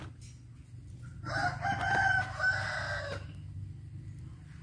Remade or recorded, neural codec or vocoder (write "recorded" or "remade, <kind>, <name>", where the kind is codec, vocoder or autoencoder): recorded